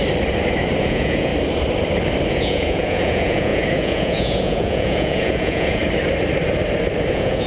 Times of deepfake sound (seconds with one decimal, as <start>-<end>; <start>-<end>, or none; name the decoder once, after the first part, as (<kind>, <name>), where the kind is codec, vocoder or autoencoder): 0.8-1.3 (vocoder, Vocos); 2.3-5.8; 7.1-7.5